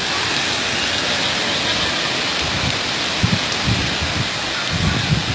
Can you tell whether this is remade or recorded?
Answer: recorded